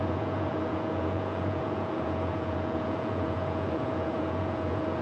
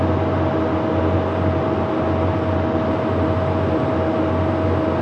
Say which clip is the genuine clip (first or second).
second